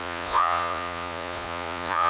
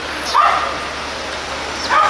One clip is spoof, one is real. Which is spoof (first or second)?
first